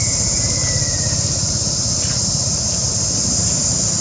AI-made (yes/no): no